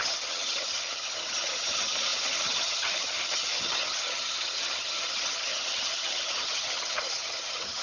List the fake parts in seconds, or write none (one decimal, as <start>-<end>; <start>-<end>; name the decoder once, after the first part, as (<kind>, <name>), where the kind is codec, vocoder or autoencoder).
0.0-7.8 (vocoder, HiFi-GAN)